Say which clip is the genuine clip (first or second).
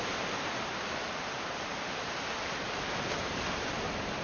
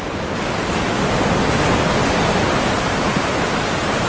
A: second